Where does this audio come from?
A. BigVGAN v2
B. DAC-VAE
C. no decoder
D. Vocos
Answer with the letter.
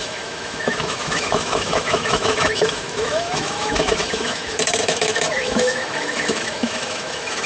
B